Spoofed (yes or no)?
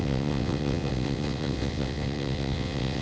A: yes